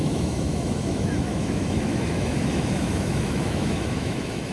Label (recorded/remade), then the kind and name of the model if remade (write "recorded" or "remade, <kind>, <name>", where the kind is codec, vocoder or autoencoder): remade, autoencoder, DAC-VAE